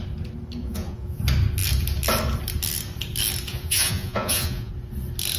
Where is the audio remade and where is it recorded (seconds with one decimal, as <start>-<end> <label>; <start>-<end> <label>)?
0.0-0.6 recorded; 0.6-1.2 remade; 1.2-3.5 recorded; 3.5-4.7 remade; 4.7-5.4 recorded